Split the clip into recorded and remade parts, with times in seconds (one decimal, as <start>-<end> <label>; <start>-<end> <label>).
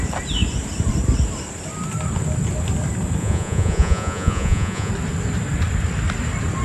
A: 0.0-3.2 recorded; 3.2-4.9 remade; 4.9-6.6 recorded